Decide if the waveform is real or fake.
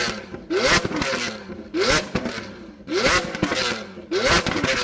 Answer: real